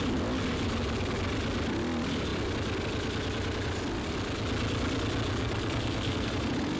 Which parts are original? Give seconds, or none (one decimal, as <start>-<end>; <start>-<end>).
0.0-5.4; 6.3-6.8